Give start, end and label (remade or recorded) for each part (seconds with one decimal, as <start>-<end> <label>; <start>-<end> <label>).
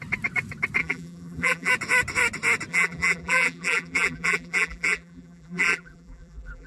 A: 0.0-0.8 recorded; 0.8-1.7 remade; 1.7-2.7 recorded; 2.7-6.7 remade